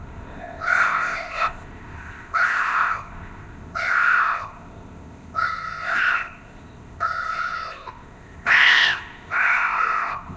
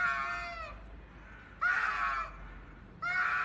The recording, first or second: second